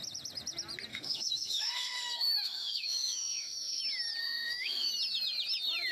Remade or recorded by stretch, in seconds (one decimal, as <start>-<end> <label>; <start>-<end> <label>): 0.0-0.9 recorded; 0.9-3.8 remade; 3.8-4.2 recorded; 4.2-4.9 remade; 4.9-5.9 recorded